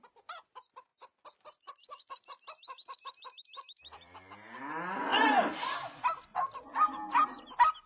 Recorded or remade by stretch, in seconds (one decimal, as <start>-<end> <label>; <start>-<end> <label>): 0.0-0.9 recorded; 0.9-4.3 remade; 4.3-5.1 recorded; 5.1-7.1 remade; 7.1-7.9 recorded